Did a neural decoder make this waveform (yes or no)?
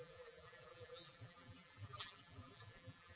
yes